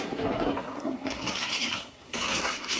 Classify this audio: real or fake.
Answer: fake